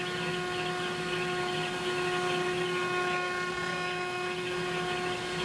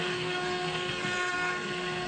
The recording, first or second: first